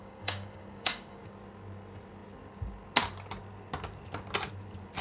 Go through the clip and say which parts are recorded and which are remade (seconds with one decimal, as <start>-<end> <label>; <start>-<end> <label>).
0.0-1.2 remade; 1.2-5.0 recorded